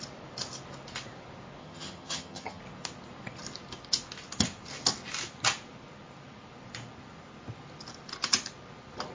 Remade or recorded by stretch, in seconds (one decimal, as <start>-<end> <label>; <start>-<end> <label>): 0.0-1.6 recorded; 1.6-2.6 remade; 2.6-9.1 recorded